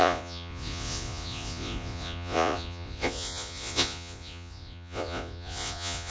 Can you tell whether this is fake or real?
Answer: fake